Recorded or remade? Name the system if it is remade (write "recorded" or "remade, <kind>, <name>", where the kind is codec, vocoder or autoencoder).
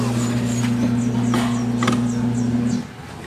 recorded